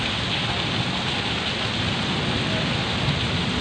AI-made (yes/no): no